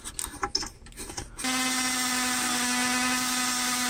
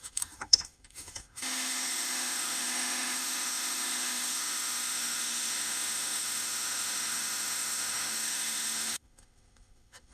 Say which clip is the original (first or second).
first